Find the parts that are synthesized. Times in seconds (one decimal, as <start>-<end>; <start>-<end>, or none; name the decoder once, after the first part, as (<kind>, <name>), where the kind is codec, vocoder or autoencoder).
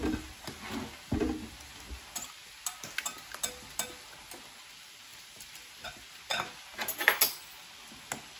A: none